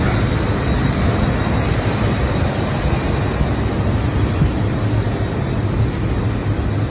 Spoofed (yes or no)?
no